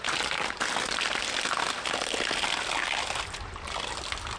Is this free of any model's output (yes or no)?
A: yes